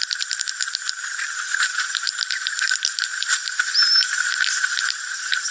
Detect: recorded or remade recorded